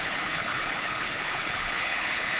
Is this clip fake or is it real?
fake